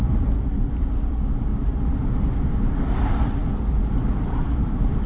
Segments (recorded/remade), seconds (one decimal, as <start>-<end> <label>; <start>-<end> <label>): 0.0-1.5 remade; 1.5-2.8 recorded; 2.8-5.1 remade